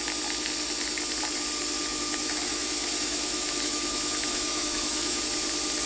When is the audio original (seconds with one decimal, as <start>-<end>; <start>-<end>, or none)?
0.0-1.9; 5.2-5.9